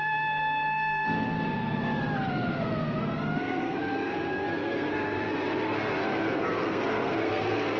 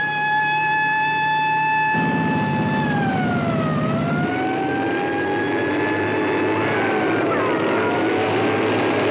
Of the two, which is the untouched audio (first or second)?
second